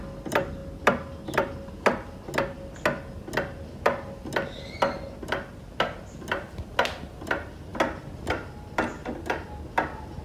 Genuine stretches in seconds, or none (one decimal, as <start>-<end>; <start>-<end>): 0.0-10.2